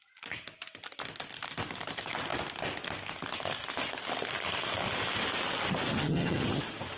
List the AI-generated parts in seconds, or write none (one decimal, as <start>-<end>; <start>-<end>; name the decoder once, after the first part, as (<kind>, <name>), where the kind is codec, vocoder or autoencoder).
5.9-6.6 (vocoder, HiFi-GAN)